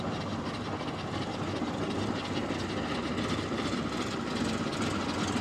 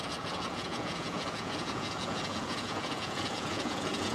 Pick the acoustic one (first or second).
first